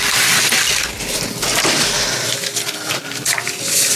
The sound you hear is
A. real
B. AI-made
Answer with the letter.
A